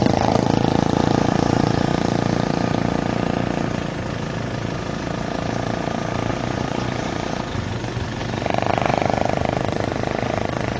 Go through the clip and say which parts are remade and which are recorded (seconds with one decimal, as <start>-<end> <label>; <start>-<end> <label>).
0.0-1.9 remade; 1.9-6.3 recorded; 6.3-8.2 remade; 8.2-8.7 recorded; 8.7-10.8 remade